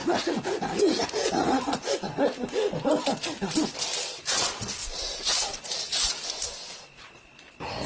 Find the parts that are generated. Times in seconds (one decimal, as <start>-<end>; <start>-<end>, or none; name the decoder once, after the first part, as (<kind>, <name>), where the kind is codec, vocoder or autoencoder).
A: 0.0-1.8 (vocoder, Vocos)